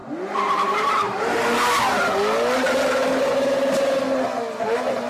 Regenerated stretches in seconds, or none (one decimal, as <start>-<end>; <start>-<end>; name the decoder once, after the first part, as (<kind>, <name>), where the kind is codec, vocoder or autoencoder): 0.0-1.4 (vocoder, BigVGAN v2)